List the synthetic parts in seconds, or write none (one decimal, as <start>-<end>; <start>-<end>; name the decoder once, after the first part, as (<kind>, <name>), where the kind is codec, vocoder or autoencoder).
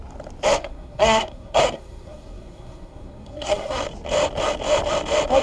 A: 0.6-3.8 (codec, SNAC)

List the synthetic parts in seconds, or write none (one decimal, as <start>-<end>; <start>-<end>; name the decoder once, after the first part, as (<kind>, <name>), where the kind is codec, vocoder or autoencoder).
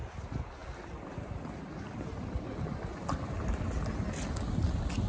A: none